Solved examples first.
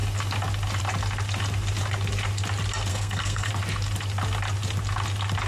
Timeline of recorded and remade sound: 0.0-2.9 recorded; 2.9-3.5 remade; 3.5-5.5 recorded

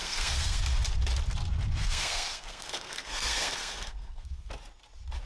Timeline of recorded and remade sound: 0.0-0.6 remade; 0.6-1.8 recorded; 1.8-4.5 remade; 4.5-5.3 recorded

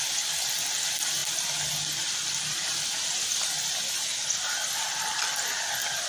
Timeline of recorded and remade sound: 0.0-6.1 recorded